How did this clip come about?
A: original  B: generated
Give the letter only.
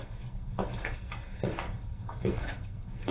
B